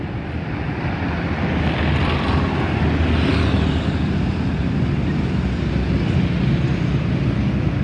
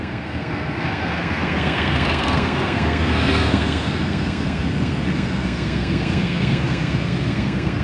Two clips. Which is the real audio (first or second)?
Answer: first